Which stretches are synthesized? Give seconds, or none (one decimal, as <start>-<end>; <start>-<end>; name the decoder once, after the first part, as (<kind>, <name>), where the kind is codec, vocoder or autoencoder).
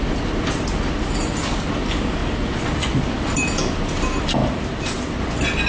none